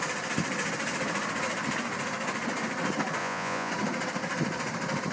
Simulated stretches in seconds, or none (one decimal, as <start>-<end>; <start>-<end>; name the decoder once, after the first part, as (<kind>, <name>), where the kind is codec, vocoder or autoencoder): 3.2-3.7 (vocoder, Vocos)